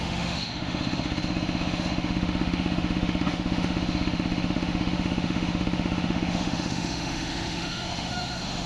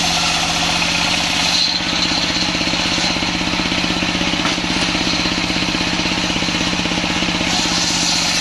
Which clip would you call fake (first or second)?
first